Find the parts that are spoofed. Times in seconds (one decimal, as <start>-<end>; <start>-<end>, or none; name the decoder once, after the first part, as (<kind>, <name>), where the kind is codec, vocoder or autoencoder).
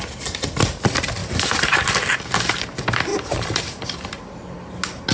1.2-1.9 (vocoder, BigVGAN v2); 3.1-4.2